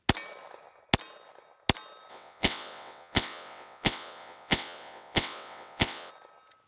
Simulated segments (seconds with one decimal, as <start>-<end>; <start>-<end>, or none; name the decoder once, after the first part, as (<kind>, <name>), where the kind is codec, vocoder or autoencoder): 2.1-6.1 (vocoder, WaveNeXt)